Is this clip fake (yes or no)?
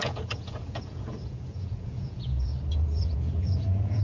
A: yes